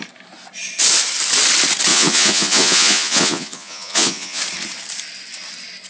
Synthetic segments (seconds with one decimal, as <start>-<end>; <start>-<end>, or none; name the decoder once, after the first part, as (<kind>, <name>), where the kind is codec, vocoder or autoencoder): 1.9-4.4 (vocoder, Vocos)